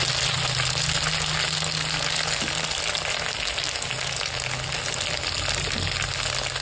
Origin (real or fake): real